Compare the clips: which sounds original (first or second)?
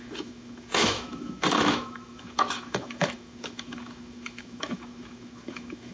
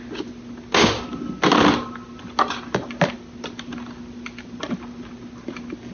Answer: second